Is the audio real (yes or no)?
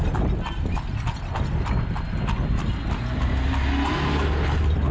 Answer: yes